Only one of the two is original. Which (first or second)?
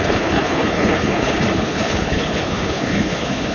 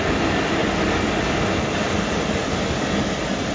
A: second